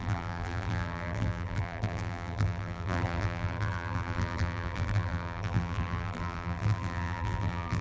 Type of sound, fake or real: fake